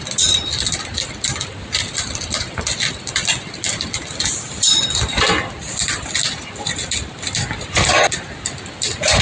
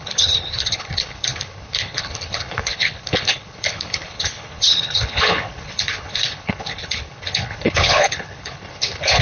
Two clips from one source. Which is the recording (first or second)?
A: first